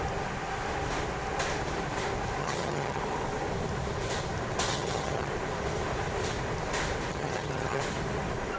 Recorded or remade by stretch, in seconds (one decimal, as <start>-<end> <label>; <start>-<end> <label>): 0.0-2.4 recorded; 2.4-3.0 remade; 3.0-4.7 recorded; 4.7-5.3 remade; 5.3-7.1 recorded; 7.1-7.8 remade; 7.8-8.6 recorded